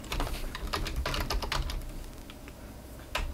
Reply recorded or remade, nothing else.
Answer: recorded